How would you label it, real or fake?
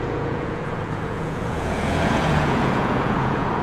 fake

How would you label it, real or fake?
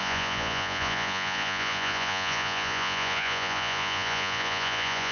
fake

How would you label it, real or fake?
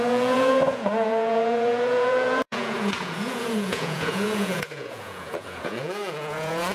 fake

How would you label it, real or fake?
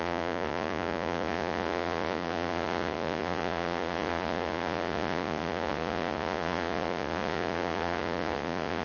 fake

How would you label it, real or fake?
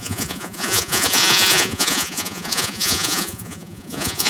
fake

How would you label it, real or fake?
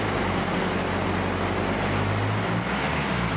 real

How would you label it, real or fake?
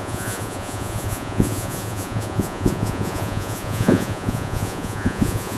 fake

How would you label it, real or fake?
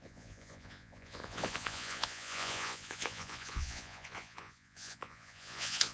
fake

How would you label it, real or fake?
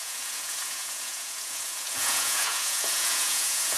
fake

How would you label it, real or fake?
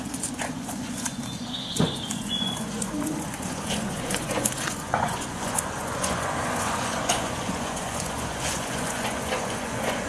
fake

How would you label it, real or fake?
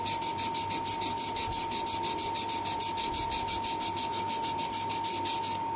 real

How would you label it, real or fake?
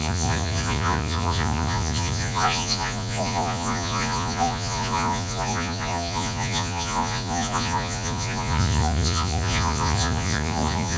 fake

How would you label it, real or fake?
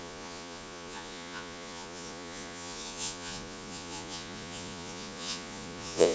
fake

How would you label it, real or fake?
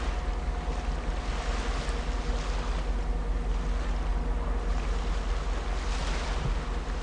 real